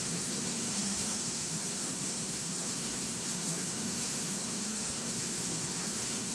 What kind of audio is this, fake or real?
fake